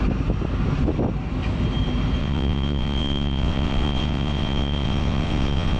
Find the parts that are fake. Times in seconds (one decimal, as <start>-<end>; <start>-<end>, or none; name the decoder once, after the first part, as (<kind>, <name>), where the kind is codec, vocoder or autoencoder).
2.2-5.8 (vocoder, WaveNeXt)

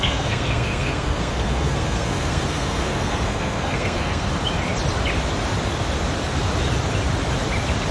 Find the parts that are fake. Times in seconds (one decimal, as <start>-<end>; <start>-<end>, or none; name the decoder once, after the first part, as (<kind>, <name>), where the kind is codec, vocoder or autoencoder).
0.0-4.3 (codec, SNAC)

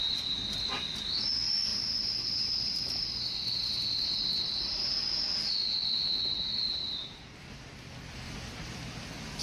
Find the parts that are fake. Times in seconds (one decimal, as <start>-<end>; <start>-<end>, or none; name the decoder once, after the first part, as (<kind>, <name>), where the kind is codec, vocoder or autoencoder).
1.7-4.9 (vocoder, BigVGAN v2); 6.7-7.4

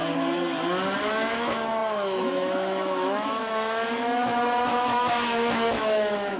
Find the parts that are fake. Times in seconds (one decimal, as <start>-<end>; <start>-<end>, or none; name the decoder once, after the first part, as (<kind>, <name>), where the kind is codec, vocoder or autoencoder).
1.1-6.4 (autoencoder, DAC-VAE)

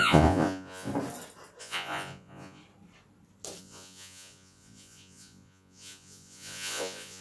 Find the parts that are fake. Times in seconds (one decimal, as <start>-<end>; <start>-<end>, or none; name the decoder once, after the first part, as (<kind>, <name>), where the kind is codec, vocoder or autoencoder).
0.0-0.9 (vocoder, Vocos); 1.6-2.6; 3.6-7.2